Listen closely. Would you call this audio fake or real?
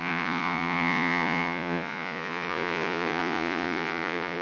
fake